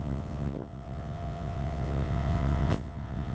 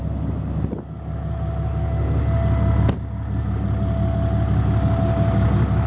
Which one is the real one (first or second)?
second